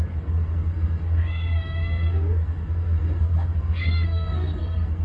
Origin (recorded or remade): remade